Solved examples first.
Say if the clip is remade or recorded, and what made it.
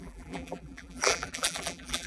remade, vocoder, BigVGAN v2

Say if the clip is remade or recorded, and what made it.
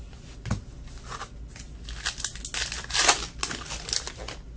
recorded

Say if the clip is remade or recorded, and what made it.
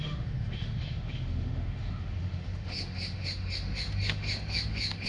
remade, autoencoder, DAC-VAE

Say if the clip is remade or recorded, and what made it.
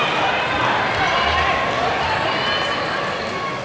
recorded